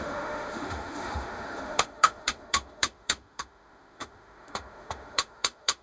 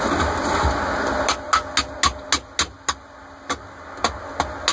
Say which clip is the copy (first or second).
first